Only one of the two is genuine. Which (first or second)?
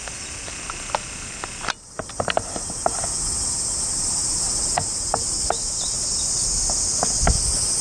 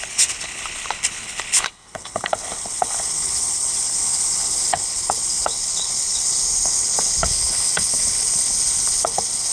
first